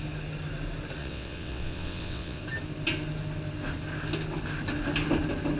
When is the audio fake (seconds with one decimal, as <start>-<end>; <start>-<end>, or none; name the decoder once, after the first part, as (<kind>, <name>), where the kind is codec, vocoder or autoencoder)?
1.0-2.4 (vocoder, WaveNeXt)